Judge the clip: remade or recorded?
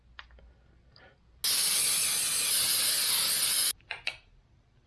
recorded